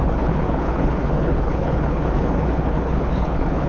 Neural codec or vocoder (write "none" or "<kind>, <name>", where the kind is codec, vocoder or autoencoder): codec, HILCodec